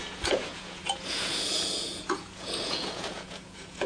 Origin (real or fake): fake